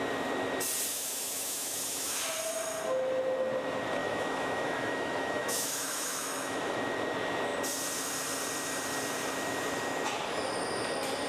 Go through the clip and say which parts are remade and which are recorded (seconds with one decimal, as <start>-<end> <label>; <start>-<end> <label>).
0.0-0.9 recorded; 0.9-2.2 remade; 2.2-4.0 recorded; 4.0-6.8 remade; 6.8-11.3 recorded